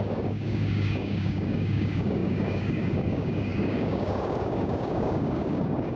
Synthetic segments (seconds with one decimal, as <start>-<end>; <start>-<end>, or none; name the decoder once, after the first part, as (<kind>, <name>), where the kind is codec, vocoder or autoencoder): 0.0-6.0 (codec, DAC)